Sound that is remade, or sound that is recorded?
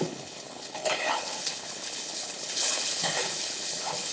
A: remade